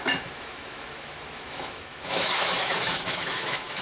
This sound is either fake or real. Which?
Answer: fake